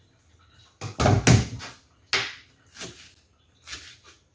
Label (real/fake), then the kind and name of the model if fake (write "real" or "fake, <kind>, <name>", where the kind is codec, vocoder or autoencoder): real